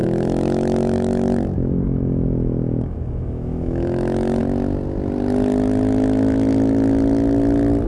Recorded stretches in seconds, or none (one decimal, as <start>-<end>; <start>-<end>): 4.4-7.9